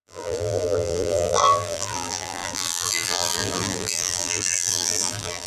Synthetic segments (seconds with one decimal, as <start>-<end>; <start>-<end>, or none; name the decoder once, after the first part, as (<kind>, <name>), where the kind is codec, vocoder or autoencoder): 0.0-5.5 (vocoder, BigVGAN v2)